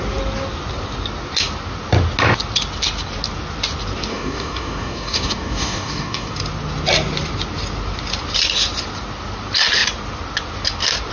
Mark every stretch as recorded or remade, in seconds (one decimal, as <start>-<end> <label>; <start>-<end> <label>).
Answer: 0.0-4.1 recorded; 4.1-6.3 remade; 6.3-11.1 recorded